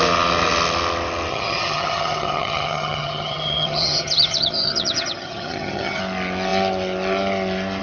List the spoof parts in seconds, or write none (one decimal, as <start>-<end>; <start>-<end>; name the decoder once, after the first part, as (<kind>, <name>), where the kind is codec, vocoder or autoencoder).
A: 1.3-6.0 (vocoder, HiFi-GAN)